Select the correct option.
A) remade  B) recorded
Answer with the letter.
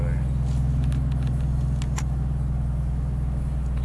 B